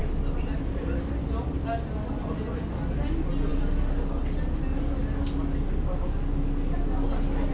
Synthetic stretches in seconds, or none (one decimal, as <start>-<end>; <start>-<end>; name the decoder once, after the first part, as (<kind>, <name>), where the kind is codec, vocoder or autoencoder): none